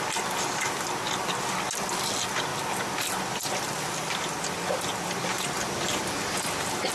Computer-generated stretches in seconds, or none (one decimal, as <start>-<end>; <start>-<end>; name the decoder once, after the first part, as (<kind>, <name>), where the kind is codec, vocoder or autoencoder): none